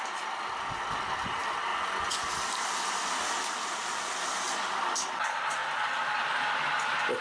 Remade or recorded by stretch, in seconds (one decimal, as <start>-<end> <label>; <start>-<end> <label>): 0.0-1.7 recorded; 1.7-2.3 remade; 2.3-7.2 recorded